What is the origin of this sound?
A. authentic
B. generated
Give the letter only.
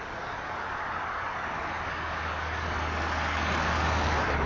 B